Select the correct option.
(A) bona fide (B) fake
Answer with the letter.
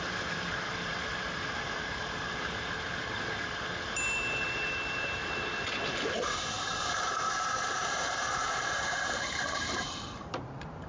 B